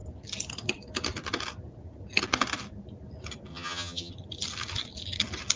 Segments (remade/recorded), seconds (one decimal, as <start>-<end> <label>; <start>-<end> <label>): 0.0-3.5 recorded; 3.5-4.1 remade; 4.1-5.6 recorded